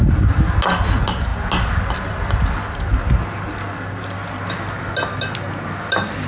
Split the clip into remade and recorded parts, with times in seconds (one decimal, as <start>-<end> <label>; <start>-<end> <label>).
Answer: 0.0-6.3 recorded